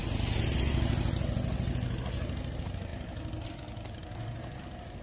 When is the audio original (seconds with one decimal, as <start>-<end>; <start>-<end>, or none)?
0.0-2.9; 4.6-5.0